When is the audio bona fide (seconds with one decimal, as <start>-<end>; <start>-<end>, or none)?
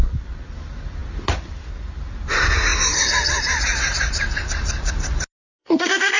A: 0.0-5.6